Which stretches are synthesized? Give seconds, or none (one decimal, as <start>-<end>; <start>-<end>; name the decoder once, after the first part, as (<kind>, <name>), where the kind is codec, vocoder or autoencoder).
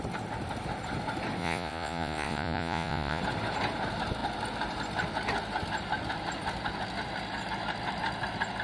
1.4-3.2 (vocoder, Vocos)